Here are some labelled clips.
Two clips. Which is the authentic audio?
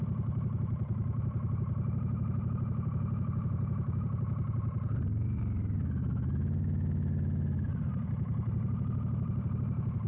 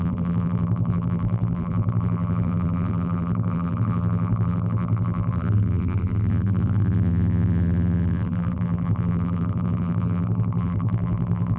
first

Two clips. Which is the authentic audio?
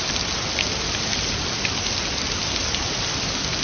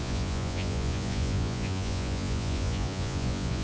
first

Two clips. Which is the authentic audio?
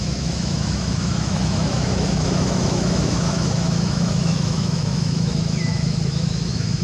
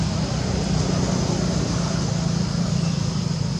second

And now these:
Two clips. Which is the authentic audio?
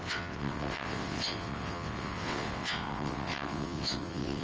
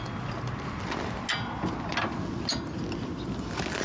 second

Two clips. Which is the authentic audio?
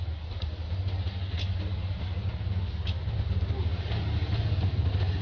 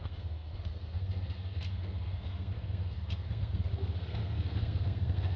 first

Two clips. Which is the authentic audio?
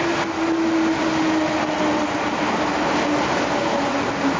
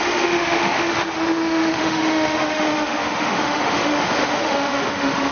first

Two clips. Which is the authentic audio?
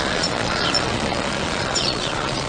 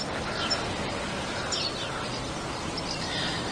second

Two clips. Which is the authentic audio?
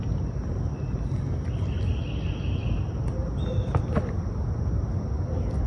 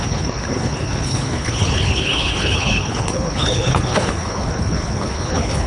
first